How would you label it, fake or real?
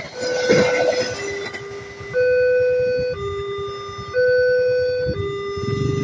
real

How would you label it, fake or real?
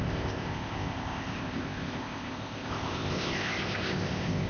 fake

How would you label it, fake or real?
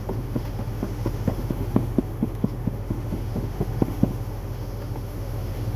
fake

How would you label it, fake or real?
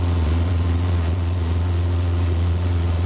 fake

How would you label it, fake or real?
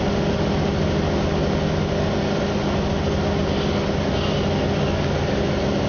real